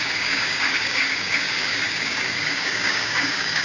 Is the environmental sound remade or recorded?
remade